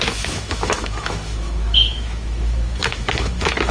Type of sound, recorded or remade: remade